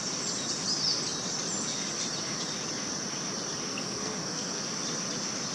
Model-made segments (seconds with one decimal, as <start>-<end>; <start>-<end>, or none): 3.7-4.6